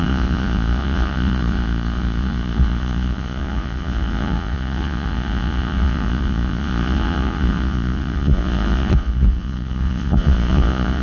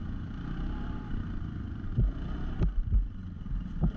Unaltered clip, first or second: second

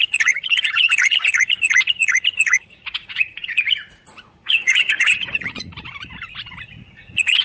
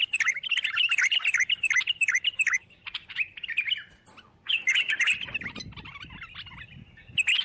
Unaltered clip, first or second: second